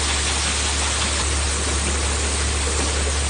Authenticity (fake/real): real